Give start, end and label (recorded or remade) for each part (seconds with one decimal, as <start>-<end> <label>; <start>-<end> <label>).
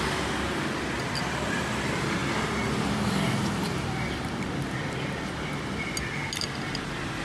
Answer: 0.0-7.2 recorded